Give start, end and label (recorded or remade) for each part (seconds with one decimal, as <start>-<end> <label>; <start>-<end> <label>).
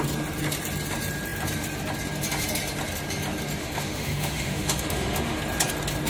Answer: 0.0-3.6 recorded; 3.6-5.4 remade; 5.4-6.1 recorded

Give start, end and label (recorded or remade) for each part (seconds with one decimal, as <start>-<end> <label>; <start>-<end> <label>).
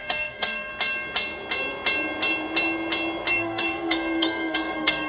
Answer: 0.0-0.7 remade; 0.7-3.3 recorded; 3.3-5.1 remade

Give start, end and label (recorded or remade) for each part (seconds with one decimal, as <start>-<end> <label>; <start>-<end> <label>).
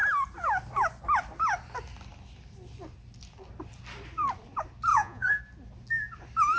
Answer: 0.0-4.9 recorded; 4.9-5.4 remade; 5.4-6.6 recorded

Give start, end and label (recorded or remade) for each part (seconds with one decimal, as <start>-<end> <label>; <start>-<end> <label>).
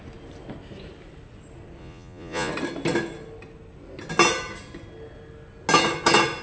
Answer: 0.0-1.8 recorded; 1.8-2.5 remade; 2.5-6.4 recorded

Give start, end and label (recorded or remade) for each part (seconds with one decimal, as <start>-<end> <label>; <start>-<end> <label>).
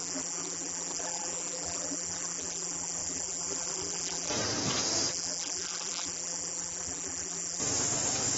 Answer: 0.0-4.3 remade; 4.3-5.1 recorded; 5.1-7.6 remade; 7.6-8.4 recorded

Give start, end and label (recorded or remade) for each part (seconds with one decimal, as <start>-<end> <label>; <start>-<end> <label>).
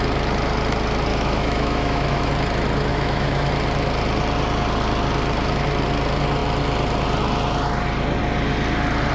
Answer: 0.0-1.1 recorded; 1.1-2.3 remade; 2.3-2.9 recorded; 2.9-3.5 remade; 3.5-9.1 recorded